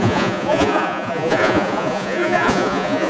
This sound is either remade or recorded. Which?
remade